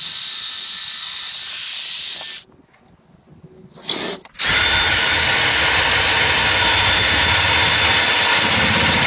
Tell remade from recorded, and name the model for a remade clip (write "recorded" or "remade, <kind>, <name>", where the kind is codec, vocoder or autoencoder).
recorded